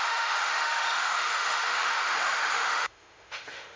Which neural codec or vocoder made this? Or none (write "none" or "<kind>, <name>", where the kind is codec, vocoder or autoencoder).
autoencoder, DAC-VAE